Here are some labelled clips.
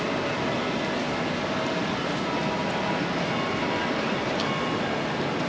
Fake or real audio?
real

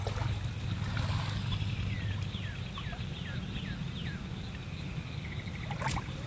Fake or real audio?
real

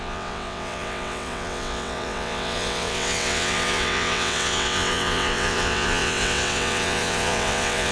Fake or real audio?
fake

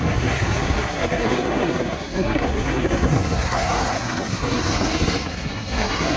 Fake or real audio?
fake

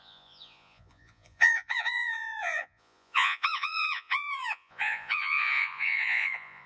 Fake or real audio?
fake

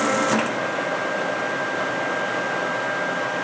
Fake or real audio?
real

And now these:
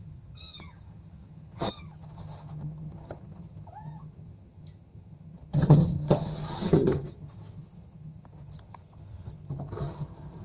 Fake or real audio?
fake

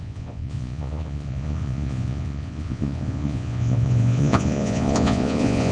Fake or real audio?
fake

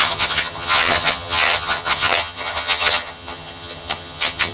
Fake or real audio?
fake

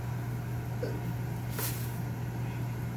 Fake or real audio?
real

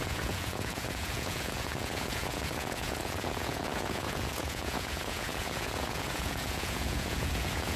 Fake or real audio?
fake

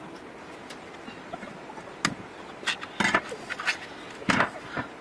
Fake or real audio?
real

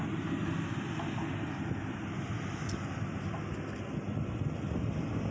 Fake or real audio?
real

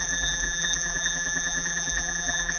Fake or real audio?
fake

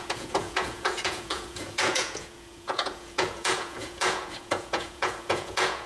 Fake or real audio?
fake